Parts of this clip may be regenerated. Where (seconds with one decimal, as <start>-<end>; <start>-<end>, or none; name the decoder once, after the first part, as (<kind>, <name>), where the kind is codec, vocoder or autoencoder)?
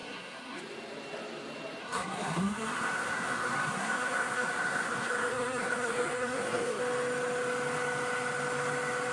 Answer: 0.0-0.6 (codec, SNAC); 1.8-6.8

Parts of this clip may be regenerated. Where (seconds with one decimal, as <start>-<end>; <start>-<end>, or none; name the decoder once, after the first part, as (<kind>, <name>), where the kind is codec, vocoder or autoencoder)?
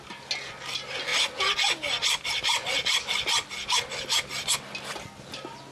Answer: none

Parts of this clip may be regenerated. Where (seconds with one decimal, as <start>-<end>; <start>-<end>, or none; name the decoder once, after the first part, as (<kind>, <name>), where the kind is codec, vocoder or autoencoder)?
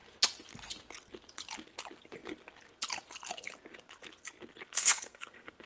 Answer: 4.7-5.7 (codec, SNAC)